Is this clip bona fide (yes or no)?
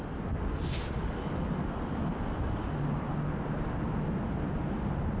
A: yes